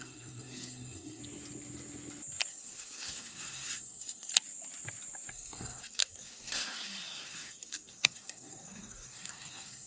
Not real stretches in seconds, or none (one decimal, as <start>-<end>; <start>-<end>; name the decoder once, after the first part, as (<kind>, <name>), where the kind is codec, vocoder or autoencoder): 0.0-1.2 (codec, SNAC); 2.5-4.3; 5.3-9.9

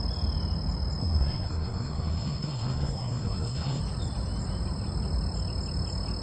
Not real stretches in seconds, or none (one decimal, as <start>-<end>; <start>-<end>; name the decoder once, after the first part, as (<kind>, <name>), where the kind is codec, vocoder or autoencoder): 1.0-3.8 (codec, SNAC)

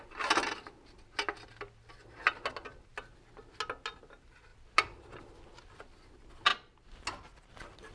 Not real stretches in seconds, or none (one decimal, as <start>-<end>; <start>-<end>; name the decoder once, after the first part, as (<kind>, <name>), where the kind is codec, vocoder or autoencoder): none

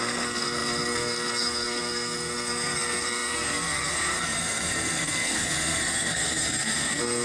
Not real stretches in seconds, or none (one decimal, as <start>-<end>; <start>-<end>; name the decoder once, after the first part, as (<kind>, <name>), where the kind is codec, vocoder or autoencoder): 0.0-7.2 (codec, SNAC)

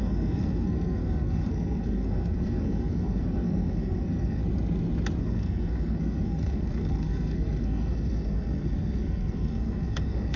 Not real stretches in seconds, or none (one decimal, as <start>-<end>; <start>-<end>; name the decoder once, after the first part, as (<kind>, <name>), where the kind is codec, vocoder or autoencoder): 0.0-4.4 (codec, SNAC); 5.2-10.4

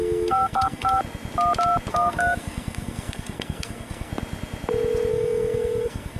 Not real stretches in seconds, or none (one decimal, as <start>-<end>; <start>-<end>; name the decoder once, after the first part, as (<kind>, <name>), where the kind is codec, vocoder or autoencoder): 0.0-1.0 (codec, SNAC); 1.9-4.1; 5.1-6.2

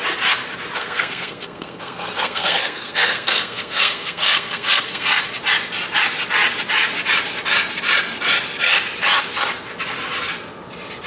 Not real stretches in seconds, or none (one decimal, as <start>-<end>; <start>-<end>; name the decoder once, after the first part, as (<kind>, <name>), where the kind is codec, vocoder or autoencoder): 0.8-5.2 (codec, SNAC)

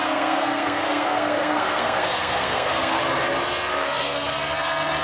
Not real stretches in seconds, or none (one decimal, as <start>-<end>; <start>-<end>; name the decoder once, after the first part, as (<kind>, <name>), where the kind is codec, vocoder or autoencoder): 0.0-3.0 (codec, SNAC); 3.7-4.3